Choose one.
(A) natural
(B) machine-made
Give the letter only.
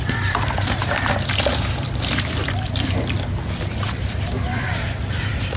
B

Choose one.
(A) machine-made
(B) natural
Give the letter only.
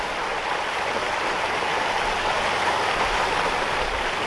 B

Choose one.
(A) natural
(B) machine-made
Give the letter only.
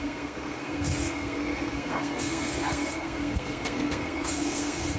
B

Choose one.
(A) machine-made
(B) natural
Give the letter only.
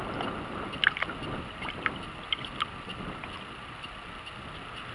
B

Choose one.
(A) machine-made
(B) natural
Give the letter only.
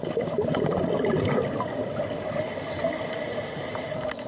B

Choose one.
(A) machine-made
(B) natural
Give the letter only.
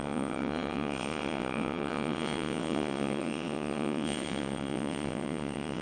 A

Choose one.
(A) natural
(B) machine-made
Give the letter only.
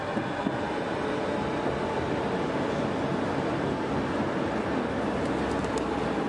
A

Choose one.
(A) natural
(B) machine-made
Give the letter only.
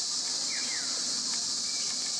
A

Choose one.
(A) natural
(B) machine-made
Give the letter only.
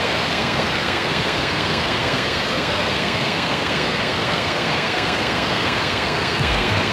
B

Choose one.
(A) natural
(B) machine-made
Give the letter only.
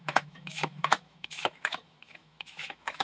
B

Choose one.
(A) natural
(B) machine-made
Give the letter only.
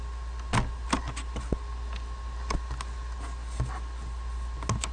A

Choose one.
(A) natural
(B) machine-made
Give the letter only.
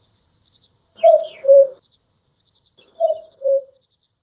B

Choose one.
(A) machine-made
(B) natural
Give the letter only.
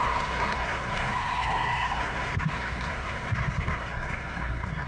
A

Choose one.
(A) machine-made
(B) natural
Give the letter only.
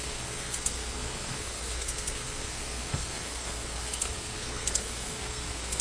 A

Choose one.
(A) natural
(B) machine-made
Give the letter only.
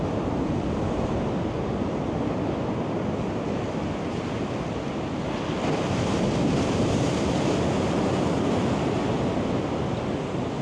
A